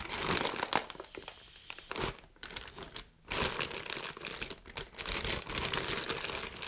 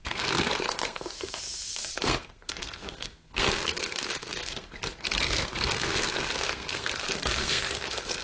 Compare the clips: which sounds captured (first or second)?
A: first